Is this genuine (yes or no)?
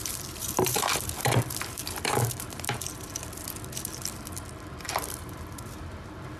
no